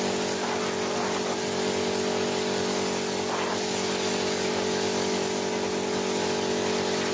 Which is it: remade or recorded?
recorded